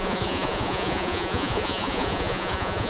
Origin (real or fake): fake